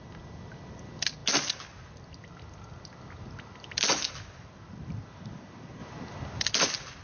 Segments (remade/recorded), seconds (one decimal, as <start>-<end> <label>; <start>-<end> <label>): 0.0-7.0 recorded